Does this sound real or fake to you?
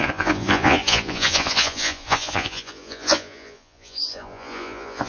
fake